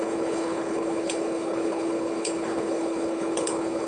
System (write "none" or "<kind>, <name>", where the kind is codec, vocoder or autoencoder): codec, HILCodec